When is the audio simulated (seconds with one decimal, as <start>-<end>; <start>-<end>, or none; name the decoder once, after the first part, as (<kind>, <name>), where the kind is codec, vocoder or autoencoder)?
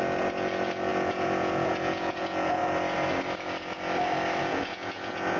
0.0-2.6 (vocoder, Vocos); 4.4-5.4